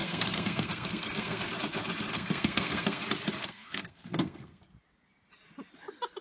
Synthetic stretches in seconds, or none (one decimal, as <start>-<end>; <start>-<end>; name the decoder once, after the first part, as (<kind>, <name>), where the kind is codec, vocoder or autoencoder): 0.0-1.5 (codec, SNAC); 2.1-3.0; 3.4-4.6